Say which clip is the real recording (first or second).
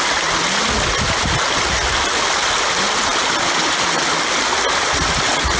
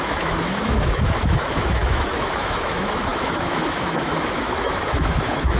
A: first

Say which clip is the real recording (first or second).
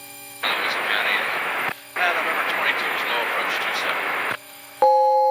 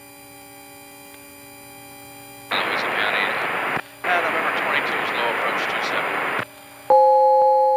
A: second